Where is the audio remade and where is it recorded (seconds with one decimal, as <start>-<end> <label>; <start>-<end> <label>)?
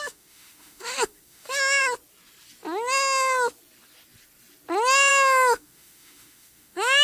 0.0-1.8 remade; 1.8-5.1 recorded; 5.1-7.0 remade